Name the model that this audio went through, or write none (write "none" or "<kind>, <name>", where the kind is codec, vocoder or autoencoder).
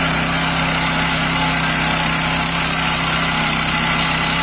none